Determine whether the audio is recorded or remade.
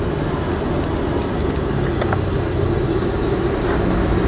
recorded